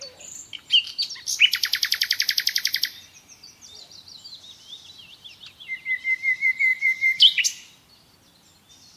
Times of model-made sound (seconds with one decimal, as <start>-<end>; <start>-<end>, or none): 1.4-3.8; 6.7-7.4